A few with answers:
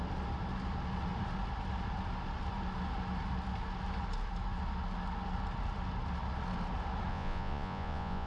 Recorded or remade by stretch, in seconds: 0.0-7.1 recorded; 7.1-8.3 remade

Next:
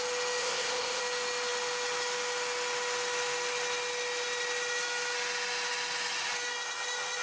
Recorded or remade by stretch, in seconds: 0.0-0.4 recorded; 0.4-1.0 remade; 1.0-7.2 recorded